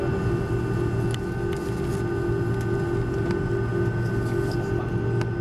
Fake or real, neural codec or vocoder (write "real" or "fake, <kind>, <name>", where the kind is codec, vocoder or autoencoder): real